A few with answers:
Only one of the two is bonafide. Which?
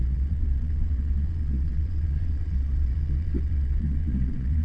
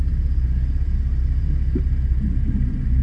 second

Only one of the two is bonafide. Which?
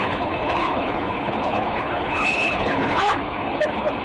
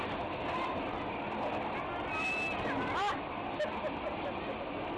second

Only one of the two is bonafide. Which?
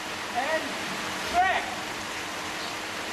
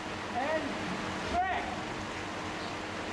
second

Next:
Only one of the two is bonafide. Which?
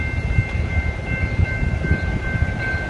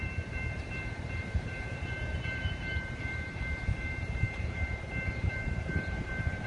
first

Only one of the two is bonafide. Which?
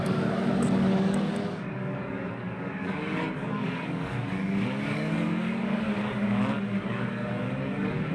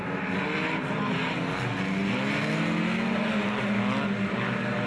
second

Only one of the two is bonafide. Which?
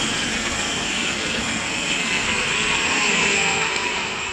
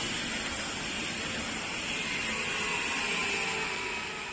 second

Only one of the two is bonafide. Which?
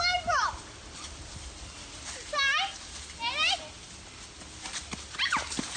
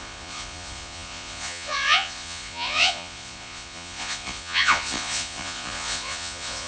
first